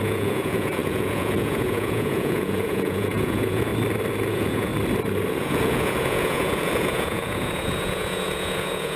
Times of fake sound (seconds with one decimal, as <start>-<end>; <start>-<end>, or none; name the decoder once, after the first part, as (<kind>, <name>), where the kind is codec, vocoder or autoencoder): 0.0-3.7 (vocoder, Vocos); 4.3-4.7; 5.3-9.0

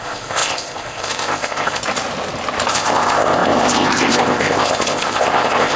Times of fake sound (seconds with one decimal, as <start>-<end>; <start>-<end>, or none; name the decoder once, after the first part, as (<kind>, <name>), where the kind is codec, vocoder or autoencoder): 0.0-1.8 (codec, ZipCodec); 2.7-5.8

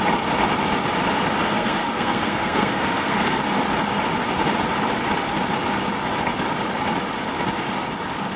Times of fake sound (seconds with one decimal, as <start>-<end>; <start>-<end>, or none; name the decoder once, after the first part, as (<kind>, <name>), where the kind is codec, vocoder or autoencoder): 1.4-3.4 (codec, SNAC)